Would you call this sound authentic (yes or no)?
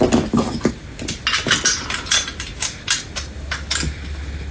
yes